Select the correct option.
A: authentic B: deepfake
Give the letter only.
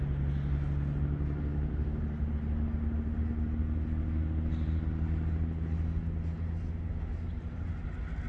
A